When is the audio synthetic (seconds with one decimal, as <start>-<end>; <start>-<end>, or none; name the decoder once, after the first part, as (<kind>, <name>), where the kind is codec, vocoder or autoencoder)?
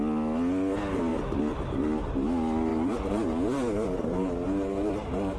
2.7-5.4 (vocoder, BigVGAN v2)